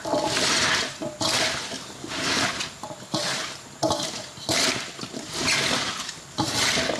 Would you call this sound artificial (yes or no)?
no